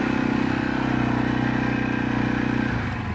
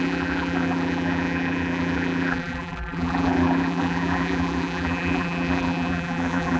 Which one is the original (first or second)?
first